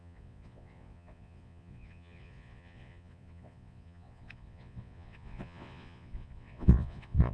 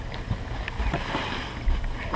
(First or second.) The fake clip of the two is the first